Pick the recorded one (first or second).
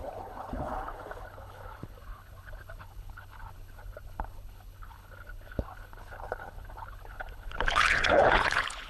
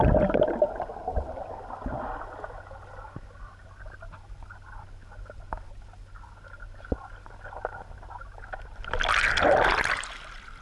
second